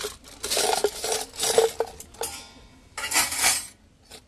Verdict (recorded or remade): recorded